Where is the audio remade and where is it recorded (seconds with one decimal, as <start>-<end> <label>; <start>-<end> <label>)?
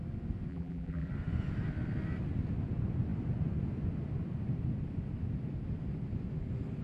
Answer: 0.0-0.5 recorded; 0.5-1.1 remade; 1.1-6.8 recorded